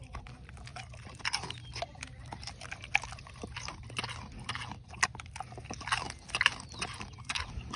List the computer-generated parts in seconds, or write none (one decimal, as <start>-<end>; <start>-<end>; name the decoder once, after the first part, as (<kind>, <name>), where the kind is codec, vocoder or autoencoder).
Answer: none